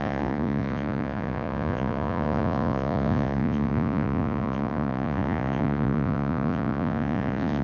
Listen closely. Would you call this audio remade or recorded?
remade